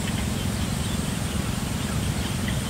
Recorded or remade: recorded